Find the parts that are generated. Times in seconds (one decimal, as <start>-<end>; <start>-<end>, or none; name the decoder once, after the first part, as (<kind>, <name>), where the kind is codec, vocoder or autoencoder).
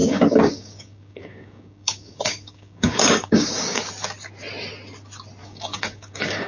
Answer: 0.0-3.9 (codec, DAC); 5.4-6.5